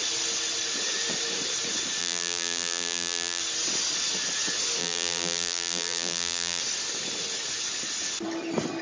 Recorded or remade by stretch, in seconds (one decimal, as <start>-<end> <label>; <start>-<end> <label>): 0.0-2.0 recorded; 2.0-3.4 remade; 3.4-4.8 recorded; 4.8-6.6 remade; 6.6-8.8 recorded